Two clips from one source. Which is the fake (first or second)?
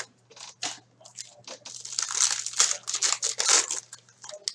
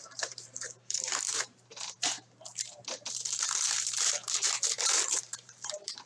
second